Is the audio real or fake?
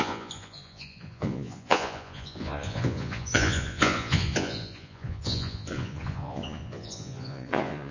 fake